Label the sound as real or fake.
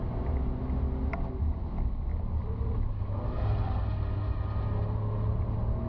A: real